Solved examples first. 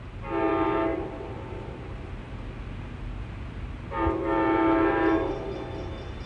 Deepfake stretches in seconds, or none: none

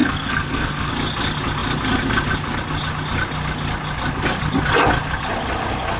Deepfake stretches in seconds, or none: 0.0-0.9 (codec, SNAC)

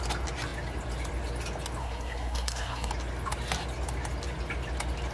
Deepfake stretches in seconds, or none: 1.8-2.9 (codec, SNAC)

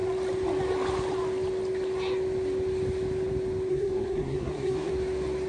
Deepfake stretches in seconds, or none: 3.7-4.9 (codec, SNAC)

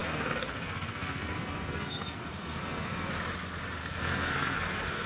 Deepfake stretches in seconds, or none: 0.0-3.1 (codec, SNAC); 3.8-5.1

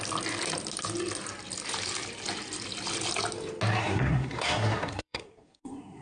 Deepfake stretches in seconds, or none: 3.8-6.0 (codec, SNAC)